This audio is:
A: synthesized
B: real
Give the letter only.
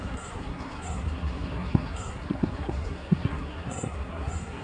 A